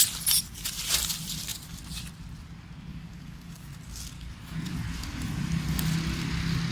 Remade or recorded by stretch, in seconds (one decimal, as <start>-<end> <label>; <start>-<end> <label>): 0.0-2.9 recorded; 2.9-3.7 remade; 3.7-6.7 recorded